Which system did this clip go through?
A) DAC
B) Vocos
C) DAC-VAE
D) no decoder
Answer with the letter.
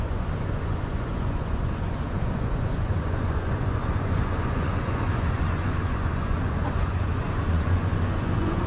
B